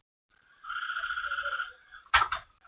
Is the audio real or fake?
real